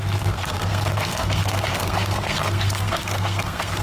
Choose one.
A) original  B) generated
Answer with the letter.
B